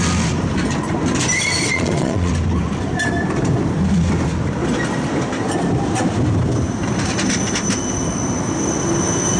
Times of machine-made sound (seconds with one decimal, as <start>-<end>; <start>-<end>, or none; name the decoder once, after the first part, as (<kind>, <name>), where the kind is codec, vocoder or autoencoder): 1.7-2.3 (vocoder, Vocos)